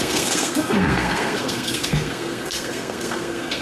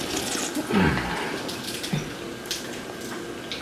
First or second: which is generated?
first